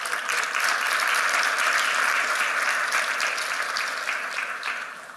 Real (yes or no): yes